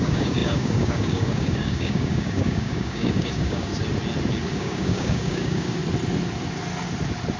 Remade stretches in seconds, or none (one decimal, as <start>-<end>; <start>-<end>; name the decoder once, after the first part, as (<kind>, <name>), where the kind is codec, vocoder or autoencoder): 0.0-3.7 (codec, DAC); 4.5-5.8